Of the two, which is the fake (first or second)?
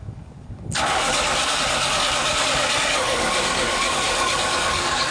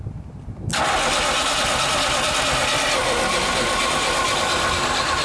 first